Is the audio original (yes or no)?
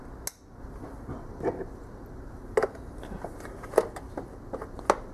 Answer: yes